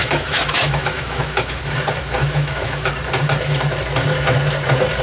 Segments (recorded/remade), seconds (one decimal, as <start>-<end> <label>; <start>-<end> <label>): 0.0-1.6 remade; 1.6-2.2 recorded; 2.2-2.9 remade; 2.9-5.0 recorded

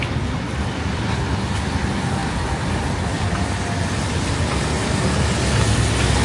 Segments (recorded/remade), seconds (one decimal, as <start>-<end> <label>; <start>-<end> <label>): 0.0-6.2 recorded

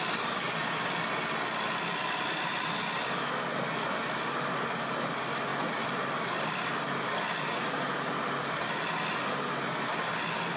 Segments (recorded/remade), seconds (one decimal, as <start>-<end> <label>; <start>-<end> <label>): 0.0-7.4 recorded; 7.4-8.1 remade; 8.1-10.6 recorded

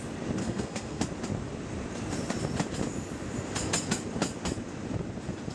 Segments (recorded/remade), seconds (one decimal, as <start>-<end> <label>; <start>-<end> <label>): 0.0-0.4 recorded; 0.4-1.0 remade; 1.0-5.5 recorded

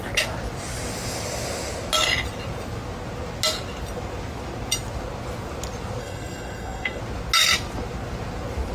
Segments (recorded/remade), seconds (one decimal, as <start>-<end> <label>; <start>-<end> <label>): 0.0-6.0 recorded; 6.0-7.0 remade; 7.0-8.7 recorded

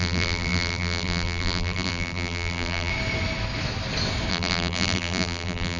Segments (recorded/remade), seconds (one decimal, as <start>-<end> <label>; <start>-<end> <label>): 0.0-2.9 remade; 2.9-4.3 recorded; 4.3-5.8 remade

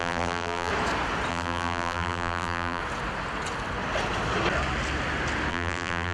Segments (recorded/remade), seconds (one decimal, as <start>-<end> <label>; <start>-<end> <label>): 0.0-0.7 remade; 0.7-1.3 recorded; 1.3-2.8 remade; 2.8-5.5 recorded; 5.5-6.1 remade

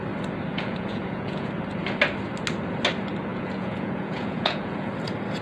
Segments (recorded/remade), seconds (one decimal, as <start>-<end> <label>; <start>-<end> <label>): 0.0-0.5 recorded; 0.5-1.5 remade; 1.5-3.3 recorded; 3.3-4.9 remade; 4.9-5.4 recorded